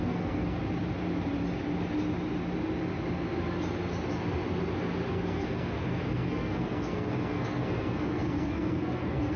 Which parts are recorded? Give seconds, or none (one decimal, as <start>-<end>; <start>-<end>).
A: 0.6-5.1